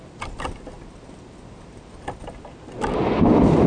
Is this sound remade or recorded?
recorded